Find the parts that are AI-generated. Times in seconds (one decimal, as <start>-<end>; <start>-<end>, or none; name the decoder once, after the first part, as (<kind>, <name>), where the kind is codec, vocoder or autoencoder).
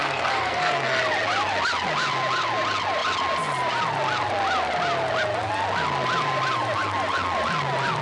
0.0-1.0 (codec, SNAC)